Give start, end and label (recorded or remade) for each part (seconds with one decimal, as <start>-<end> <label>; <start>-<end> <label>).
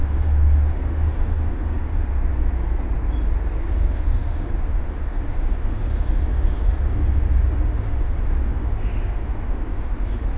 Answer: 0.0-2.3 remade; 2.3-3.7 recorded; 3.7-10.4 remade